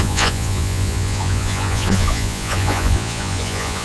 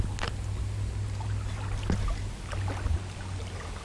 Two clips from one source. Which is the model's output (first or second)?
first